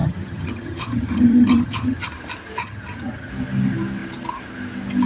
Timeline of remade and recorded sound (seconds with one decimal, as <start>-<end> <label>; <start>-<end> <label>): 0.0-2.1 remade; 2.1-2.6 recorded; 2.6-3.3 remade; 3.3-5.1 recorded